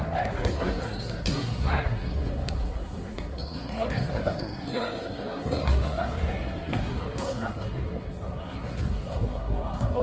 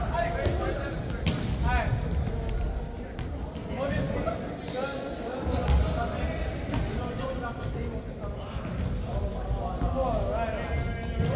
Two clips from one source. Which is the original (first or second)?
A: second